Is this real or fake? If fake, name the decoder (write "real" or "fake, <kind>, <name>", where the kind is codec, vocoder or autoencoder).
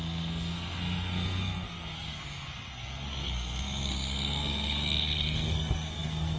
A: fake, codec, SNAC